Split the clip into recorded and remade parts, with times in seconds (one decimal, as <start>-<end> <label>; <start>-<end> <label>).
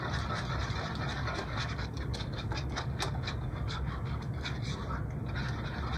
0.0-1.1 recorded; 1.1-4.6 remade; 4.6-6.0 recorded